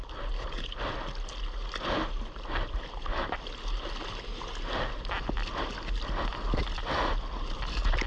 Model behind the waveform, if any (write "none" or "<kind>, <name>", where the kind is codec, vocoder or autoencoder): none